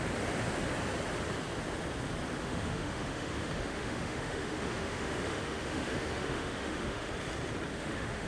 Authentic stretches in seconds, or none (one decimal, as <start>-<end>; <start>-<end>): 0.0-2.4; 7.1-7.7